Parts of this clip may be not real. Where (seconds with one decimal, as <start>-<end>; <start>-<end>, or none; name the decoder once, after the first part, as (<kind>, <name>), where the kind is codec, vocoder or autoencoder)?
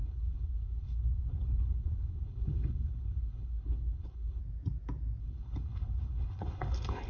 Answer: 0.0-4.4 (codec, HILCodec); 5.2-7.1